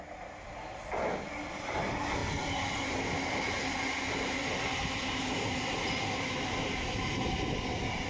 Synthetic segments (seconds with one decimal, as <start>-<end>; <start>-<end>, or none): none